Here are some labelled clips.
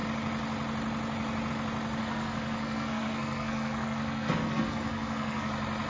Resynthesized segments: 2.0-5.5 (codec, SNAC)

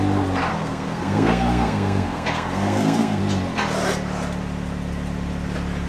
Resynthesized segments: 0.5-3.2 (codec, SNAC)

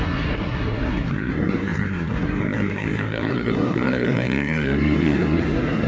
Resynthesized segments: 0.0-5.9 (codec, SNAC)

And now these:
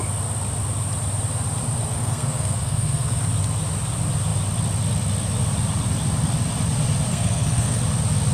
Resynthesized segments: 1.9-3.2 (codec, SNAC); 7.1-7.8